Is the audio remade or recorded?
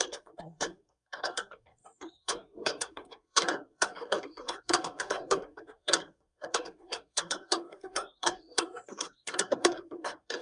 remade